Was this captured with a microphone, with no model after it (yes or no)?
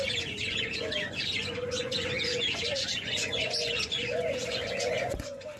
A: no